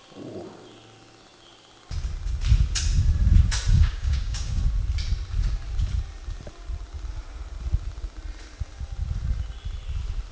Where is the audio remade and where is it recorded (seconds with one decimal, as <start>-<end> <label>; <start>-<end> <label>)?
0.0-3.7 recorded; 3.7-4.6 remade; 4.6-10.3 recorded